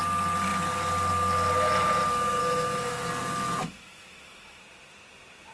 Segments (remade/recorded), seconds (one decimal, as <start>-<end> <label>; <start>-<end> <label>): 0.0-2.4 recorded; 2.4-3.1 remade; 3.1-3.6 recorded; 3.6-4.6 remade; 4.6-5.5 recorded

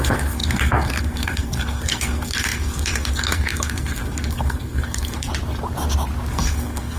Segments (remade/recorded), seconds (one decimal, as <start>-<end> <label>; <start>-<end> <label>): 0.0-5.3 remade; 5.3-6.3 recorded; 6.3-7.0 remade

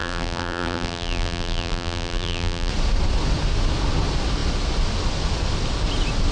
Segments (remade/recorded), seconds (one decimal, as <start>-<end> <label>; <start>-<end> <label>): 0.0-2.7 remade; 2.7-6.3 recorded